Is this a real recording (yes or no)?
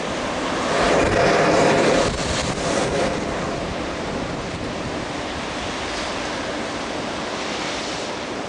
yes